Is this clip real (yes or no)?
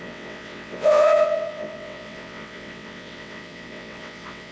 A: no